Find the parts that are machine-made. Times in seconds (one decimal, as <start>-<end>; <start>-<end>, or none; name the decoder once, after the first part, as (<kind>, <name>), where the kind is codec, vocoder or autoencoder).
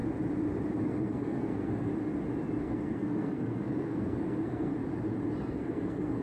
0.8-1.9 (codec, SNAC); 2.6-4.7; 5.5-6.2